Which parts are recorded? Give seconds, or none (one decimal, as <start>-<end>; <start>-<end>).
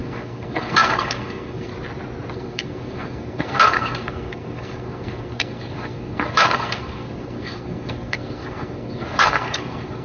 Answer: 1.7-2.3